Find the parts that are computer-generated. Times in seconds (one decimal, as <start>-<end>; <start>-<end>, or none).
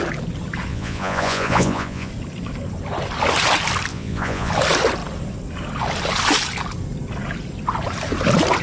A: 0.7-2.1; 3.9-4.5